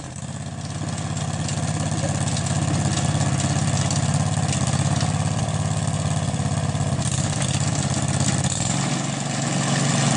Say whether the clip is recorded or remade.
recorded